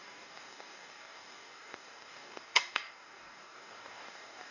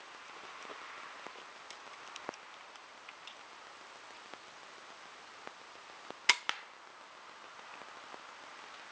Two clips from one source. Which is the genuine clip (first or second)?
second